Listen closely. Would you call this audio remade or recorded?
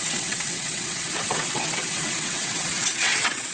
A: remade